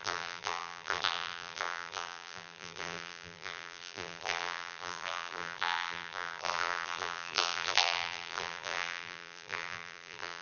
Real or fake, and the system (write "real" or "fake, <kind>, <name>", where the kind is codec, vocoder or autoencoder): fake, vocoder, BigVGAN v2